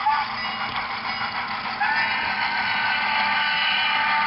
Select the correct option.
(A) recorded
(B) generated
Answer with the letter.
A